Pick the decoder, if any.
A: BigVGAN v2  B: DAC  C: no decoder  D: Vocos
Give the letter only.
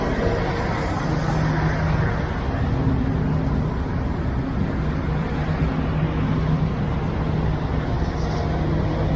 C